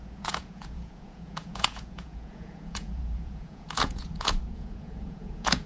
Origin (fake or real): fake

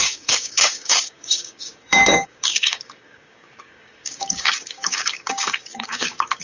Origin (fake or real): fake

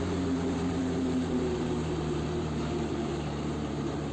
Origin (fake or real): fake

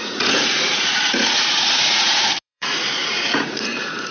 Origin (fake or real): fake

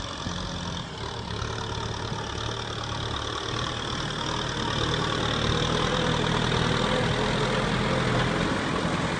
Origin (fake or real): real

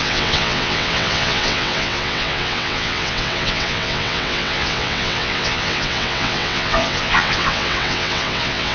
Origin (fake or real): fake